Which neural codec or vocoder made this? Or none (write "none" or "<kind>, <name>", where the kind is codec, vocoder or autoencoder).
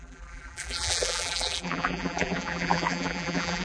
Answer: vocoder, BigVGAN v2